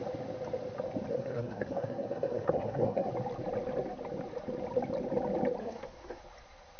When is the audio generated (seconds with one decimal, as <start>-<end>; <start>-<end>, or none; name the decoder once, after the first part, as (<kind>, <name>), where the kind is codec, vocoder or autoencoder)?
1.1-3.1 (codec, SNAC); 5.6-6.2

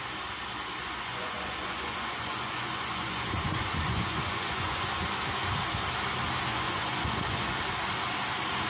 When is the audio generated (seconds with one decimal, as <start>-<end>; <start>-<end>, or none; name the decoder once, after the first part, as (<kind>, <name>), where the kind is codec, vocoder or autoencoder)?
0.8-4.9 (vocoder, Vocos); 6.5-7.6

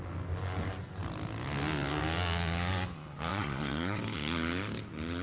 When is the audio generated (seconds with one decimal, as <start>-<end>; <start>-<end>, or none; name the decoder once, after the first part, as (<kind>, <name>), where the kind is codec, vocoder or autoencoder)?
3.3-4.0 (vocoder, WaveNeXt)

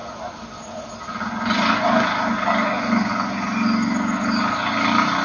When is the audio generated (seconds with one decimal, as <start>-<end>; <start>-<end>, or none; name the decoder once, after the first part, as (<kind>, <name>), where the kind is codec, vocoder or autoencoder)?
none

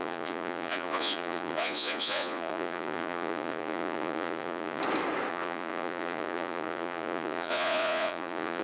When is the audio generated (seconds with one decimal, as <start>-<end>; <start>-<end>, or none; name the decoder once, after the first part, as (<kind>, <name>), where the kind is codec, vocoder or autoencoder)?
0.0-4.8 (vocoder, Vocos); 5.3-8.6

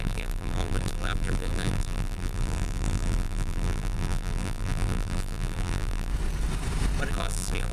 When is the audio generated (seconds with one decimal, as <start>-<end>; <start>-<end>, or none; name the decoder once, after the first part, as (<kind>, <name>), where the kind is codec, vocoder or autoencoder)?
0.0-6.1 (vocoder, BigVGAN v2); 7.1-7.7